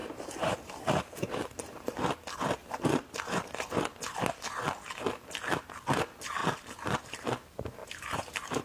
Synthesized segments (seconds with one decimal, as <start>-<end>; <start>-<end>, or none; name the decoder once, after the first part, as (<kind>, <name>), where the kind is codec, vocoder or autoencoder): 0.0-2.0 (vocoder, BigVGAN v2); 2.6-3.2; 7.8-8.6